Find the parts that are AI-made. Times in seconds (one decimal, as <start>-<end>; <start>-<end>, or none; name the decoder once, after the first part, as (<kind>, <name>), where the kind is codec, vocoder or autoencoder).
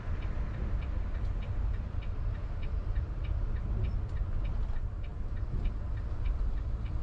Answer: 2.8-4.5 (vocoder, BigVGAN v2); 5.1-7.0